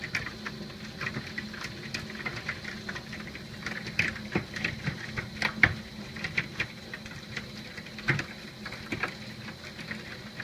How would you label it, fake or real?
real